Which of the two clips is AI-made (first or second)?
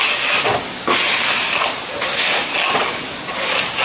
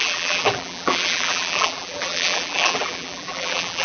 second